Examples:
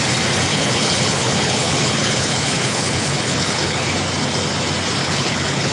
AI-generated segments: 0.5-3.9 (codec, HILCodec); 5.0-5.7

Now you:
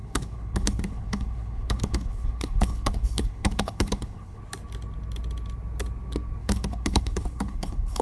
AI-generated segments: 0.0-4.4 (codec, HILCodec); 6.4-8.0